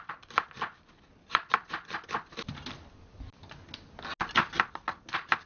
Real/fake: real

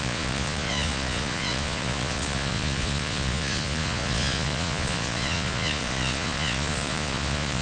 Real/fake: fake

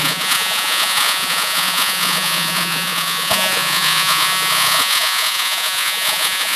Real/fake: fake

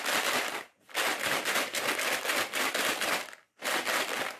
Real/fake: real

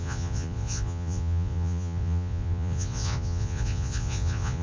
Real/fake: fake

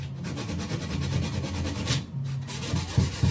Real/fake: real